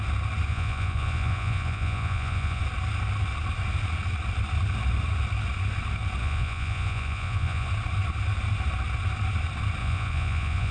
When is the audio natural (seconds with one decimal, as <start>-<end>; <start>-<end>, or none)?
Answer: 0.0-0.5; 2.6-6.2; 7.7-9.8